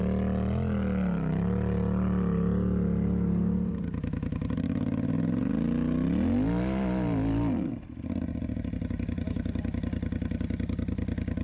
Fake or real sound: real